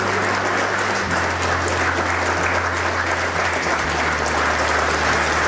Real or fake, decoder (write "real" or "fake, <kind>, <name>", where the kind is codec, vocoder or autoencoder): real